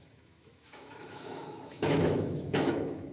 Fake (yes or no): yes